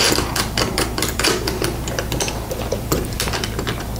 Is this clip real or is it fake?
fake